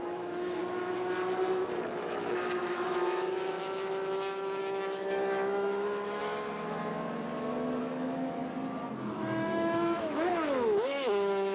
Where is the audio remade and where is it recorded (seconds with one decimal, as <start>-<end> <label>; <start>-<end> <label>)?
0.0-0.6 remade; 0.6-1.9 recorded; 1.9-6.2 remade; 6.2-7.8 recorded; 7.8-8.4 remade; 8.4-9.1 recorded; 9.1-11.5 remade